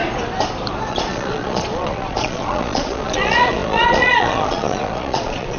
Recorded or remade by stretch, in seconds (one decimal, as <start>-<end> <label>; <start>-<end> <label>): 0.0-0.9 recorded; 0.9-5.6 remade